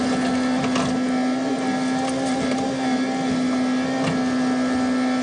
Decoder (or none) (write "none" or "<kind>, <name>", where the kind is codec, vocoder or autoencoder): none